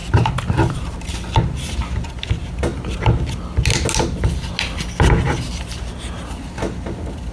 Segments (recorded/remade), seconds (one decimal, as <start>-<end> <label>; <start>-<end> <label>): 0.0-7.3 recorded